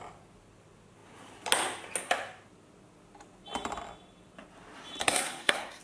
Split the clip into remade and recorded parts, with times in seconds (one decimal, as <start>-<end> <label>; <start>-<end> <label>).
0.0-5.0 recorded; 5.0-5.8 remade